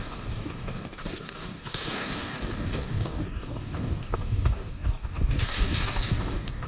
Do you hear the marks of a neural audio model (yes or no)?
yes